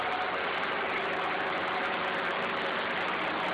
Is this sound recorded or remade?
recorded